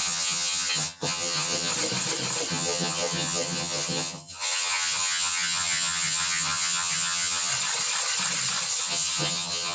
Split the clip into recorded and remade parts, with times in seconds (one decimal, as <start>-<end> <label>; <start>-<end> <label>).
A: 0.0-1.7 remade; 1.7-2.5 recorded; 2.5-7.5 remade; 7.5-8.8 recorded; 8.8-9.7 remade